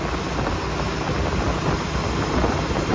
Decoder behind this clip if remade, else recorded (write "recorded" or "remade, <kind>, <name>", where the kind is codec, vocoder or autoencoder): recorded